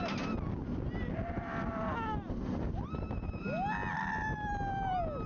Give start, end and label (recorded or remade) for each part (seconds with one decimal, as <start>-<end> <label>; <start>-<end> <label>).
0.0-5.3 recorded